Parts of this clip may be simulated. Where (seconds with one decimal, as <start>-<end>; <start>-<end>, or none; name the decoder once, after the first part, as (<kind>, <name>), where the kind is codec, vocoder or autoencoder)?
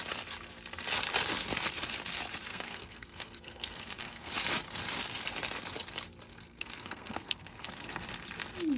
2.5-4.3 (codec, SNAC); 6.3-7.7